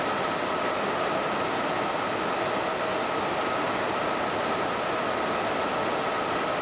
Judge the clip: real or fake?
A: real